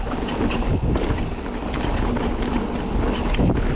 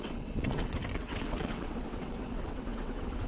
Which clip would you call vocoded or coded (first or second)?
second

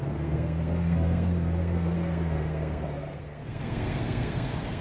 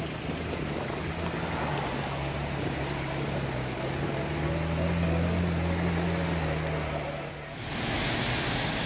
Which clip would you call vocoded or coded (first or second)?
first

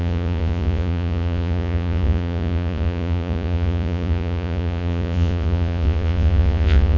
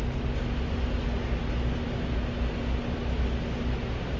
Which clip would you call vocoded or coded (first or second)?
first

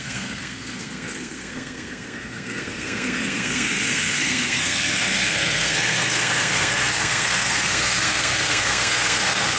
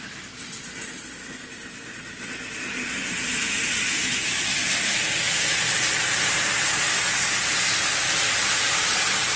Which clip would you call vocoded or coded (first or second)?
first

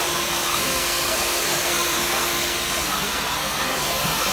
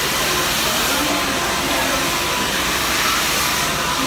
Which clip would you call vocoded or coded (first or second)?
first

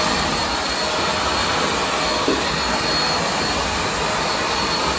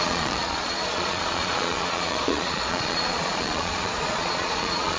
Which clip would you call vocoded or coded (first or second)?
second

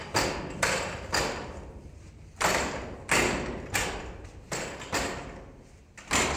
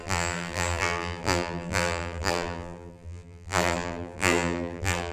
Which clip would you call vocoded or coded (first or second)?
second